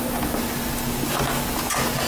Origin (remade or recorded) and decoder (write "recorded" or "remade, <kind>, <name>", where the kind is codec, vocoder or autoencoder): recorded